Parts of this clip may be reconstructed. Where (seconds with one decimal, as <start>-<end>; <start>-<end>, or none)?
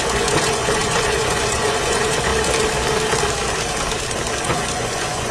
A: 0.0-2.3; 4.4-5.3